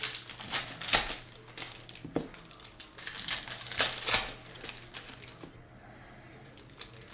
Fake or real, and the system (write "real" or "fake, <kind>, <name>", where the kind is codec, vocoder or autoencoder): real